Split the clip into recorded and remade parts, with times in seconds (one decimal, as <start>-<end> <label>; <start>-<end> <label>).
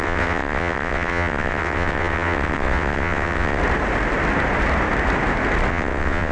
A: 0.0-3.6 remade; 3.6-5.7 recorded; 5.7-6.3 remade